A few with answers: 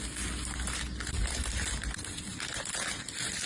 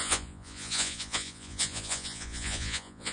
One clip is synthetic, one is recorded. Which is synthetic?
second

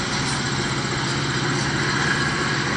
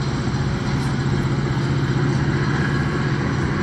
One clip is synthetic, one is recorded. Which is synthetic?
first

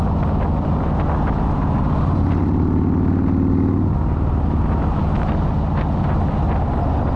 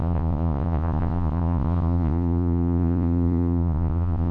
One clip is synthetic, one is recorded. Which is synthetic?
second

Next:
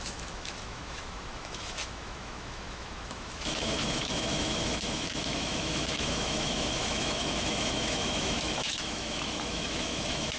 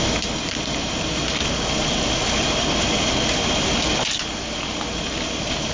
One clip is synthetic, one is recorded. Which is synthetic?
first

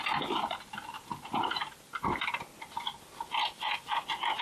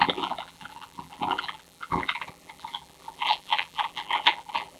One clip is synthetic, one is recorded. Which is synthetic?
second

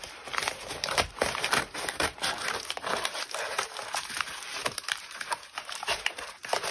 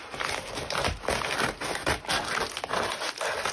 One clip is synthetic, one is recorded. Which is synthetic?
first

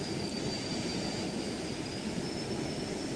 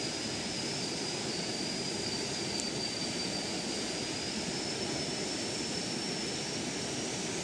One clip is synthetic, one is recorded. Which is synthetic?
second